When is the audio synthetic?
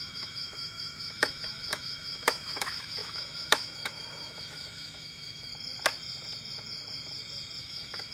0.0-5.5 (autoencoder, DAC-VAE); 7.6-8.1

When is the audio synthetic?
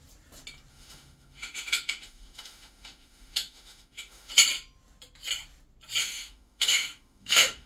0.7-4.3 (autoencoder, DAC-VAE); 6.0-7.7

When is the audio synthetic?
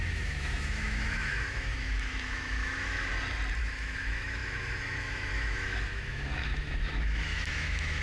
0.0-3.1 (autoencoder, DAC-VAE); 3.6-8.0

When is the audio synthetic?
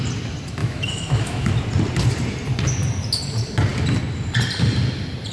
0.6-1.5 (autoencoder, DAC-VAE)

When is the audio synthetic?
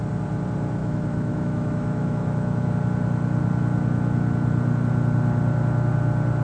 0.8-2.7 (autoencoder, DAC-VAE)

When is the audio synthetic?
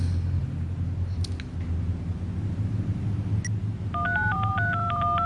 none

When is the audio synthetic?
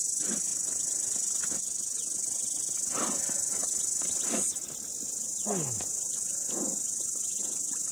none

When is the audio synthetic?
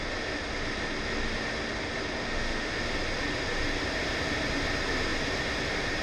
2.2-2.8 (autoencoder, DAC-VAE)